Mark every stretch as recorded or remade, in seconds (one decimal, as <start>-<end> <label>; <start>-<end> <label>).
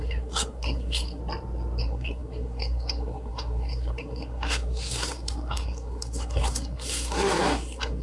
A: 0.0-1.2 remade; 1.2-1.8 recorded; 1.8-8.0 remade